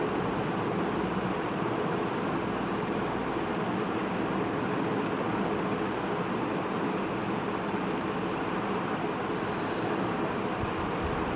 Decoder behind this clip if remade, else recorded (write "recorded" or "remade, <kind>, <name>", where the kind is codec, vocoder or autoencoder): recorded